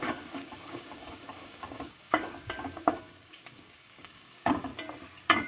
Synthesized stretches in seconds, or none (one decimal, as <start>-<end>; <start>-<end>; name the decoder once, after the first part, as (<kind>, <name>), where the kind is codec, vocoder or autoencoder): 0.0-4.7 (codec, DAC)